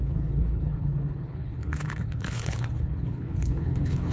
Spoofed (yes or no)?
yes